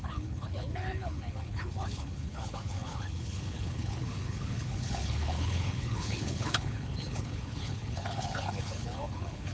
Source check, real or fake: fake